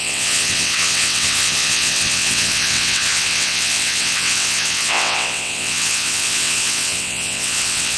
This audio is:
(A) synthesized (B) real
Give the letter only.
A